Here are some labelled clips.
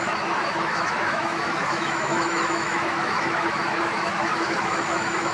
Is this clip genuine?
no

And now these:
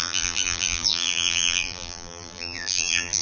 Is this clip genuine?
no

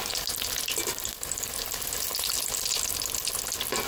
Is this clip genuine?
yes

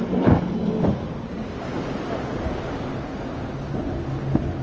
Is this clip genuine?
yes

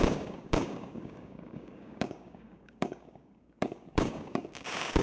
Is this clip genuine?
no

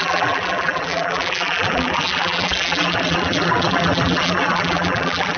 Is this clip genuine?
no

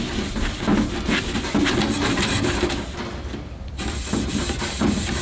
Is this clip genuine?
yes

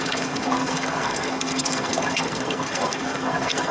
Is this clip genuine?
no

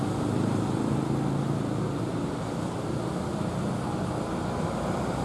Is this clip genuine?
yes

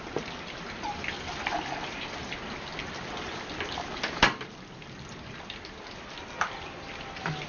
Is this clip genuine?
yes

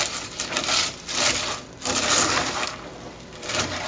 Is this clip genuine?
no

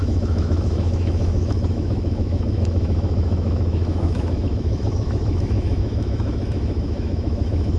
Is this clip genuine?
no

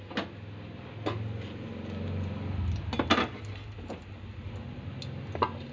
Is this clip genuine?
yes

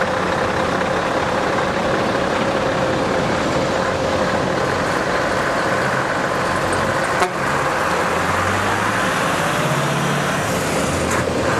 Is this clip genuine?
yes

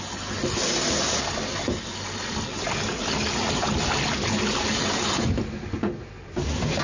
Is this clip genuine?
yes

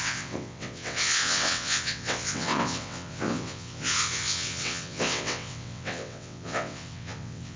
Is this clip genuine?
no